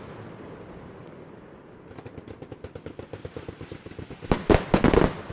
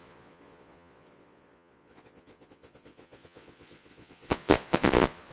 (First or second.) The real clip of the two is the first